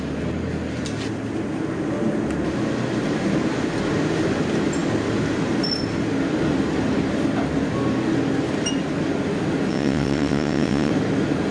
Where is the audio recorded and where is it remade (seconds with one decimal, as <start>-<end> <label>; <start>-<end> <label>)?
0.0-9.7 recorded; 9.7-10.9 remade; 10.9-11.5 recorded